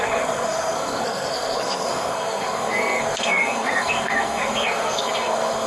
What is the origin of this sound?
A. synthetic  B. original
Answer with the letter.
A